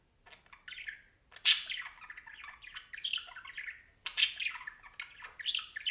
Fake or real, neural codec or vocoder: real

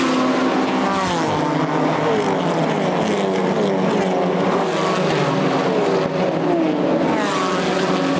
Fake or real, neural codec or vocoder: real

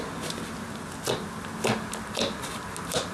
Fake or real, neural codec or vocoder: real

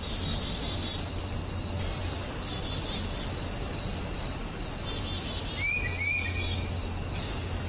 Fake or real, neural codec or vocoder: real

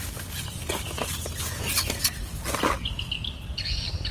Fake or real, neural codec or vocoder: real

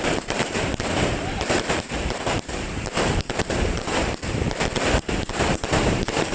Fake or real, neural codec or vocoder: fake, vocoder, BigVGAN v2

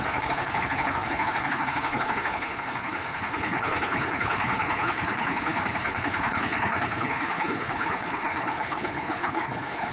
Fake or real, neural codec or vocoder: fake, codec, HILCodec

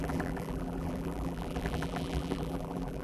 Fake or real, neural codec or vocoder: fake, vocoder, BigVGAN v2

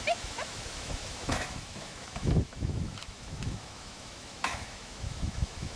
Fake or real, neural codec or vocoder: fake, autoencoder, DAC-VAE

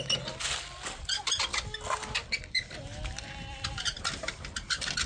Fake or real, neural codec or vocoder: real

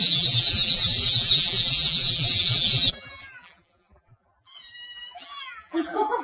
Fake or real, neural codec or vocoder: fake, vocoder, BigVGAN v2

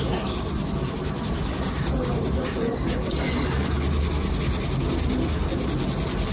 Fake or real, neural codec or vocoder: real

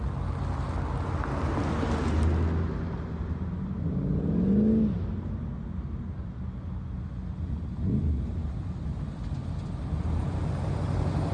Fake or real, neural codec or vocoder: real